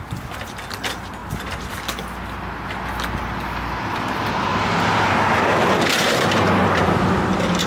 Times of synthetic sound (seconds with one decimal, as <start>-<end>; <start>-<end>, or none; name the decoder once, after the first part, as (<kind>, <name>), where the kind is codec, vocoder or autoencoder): none